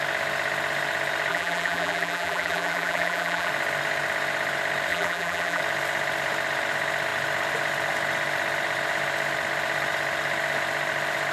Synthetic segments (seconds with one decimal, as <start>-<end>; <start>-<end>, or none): 1.3-3.5; 4.9-5.6